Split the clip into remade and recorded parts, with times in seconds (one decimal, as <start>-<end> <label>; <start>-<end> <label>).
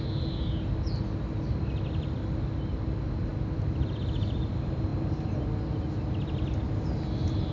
0.0-7.5 recorded